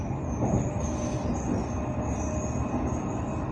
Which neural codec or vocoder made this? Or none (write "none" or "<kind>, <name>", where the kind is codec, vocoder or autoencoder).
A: none